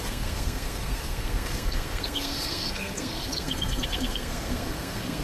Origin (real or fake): fake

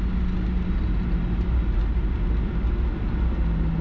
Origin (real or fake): real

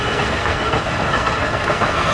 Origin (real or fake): fake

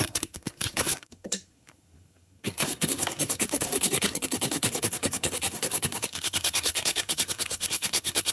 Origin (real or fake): fake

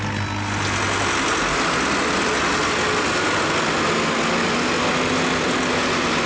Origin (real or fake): real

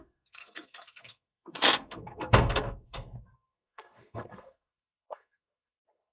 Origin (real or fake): fake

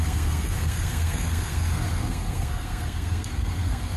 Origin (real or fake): fake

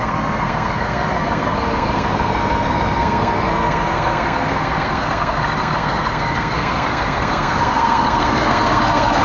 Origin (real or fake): fake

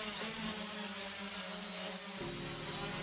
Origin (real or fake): real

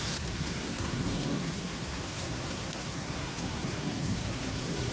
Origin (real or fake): fake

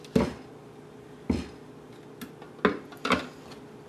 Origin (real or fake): real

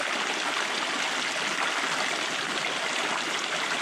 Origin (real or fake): real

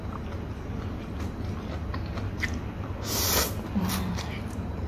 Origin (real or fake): real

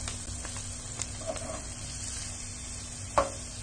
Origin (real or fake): real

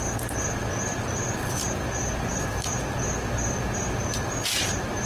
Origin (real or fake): real